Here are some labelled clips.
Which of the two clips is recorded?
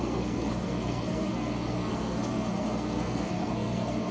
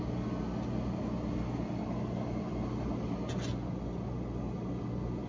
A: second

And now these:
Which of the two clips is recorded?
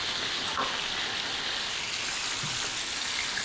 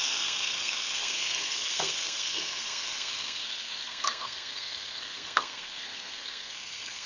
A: first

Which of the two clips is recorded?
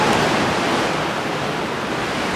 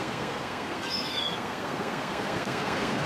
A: first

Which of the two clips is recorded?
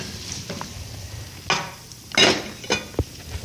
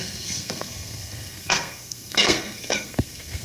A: first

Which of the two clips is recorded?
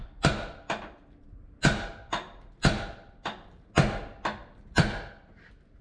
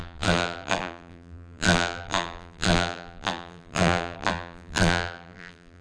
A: first